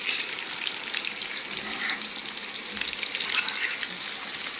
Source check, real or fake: real